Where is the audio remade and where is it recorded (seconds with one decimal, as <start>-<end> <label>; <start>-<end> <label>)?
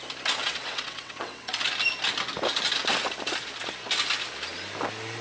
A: 0.0-0.4 recorded; 0.4-1.5 remade; 1.5-5.2 recorded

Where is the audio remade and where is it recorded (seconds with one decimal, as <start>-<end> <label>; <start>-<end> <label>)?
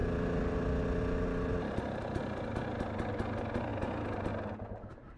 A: 0.0-5.2 recorded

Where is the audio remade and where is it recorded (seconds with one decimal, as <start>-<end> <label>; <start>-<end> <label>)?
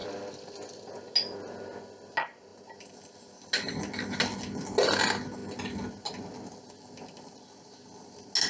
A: 0.0-8.5 recorded